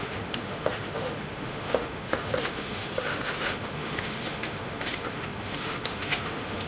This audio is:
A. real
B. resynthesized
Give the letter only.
B